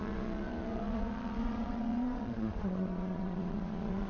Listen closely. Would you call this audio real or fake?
fake